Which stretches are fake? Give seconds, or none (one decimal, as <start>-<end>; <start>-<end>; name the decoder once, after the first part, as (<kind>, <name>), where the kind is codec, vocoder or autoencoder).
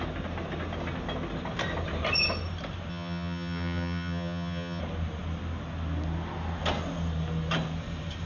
2.9-4.8 (vocoder, HiFi-GAN)